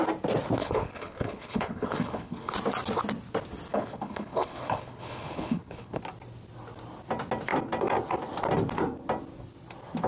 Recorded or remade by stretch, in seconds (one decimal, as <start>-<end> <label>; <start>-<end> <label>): 0.0-0.6 recorded; 0.6-2.5 remade; 2.5-3.7 recorded; 3.7-6.0 remade; 6.0-10.1 recorded